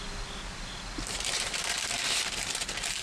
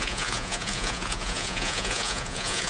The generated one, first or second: second